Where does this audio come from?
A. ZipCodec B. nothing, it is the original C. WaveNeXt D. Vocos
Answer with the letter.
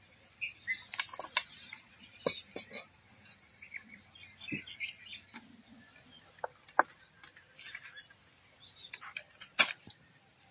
B